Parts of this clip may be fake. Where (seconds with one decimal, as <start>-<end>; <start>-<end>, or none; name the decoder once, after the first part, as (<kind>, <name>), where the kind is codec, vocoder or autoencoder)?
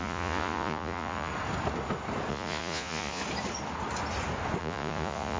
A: 0.0-1.3 (vocoder, Vocos); 2.3-3.2; 4.6-5.4